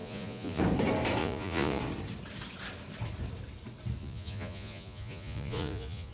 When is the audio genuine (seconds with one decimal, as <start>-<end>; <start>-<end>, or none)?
0.6-1.2; 1.8-4.0